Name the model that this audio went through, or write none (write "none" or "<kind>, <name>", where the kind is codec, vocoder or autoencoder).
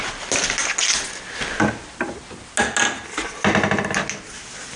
none